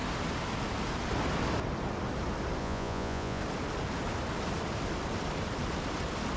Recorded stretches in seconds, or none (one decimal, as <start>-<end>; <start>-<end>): 0.0-2.6; 3.4-6.4